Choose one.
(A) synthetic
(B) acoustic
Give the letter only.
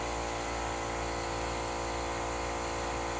B